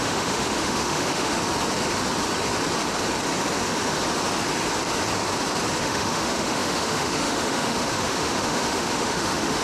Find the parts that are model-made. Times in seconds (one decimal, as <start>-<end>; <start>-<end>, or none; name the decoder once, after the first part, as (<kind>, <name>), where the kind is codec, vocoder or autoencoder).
0.0-1.4 (autoencoder, DAC-VAE); 5.8-9.6